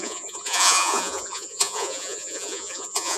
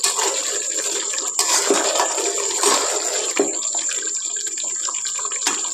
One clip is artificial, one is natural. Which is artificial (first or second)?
first